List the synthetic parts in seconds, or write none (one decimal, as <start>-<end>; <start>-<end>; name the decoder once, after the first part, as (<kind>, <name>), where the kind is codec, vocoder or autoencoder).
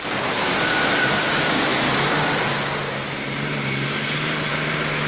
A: 4.5-5.1 (autoencoder, DAC-VAE)